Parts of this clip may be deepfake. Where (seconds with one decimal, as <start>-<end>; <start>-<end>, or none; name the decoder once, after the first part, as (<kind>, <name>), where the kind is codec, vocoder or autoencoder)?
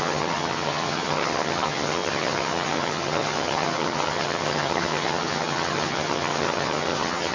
0.0-7.3 (vocoder, HiFi-GAN)